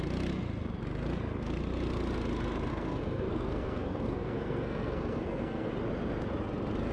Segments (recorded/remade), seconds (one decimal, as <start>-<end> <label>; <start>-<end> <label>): 0.0-2.7 recorded; 2.7-5.7 remade; 5.7-6.9 recorded

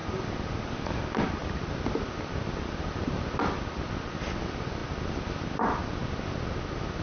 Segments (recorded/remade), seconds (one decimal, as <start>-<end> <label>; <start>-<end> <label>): 0.0-1.4 recorded; 1.4-4.0 remade; 4.0-7.0 recorded